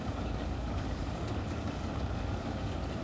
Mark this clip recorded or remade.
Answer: remade